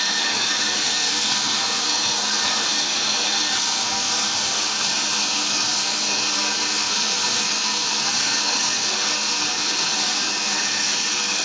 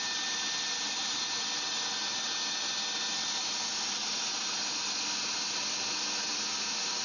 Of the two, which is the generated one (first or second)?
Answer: first